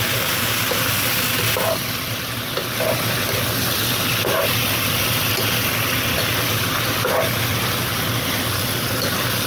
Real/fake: real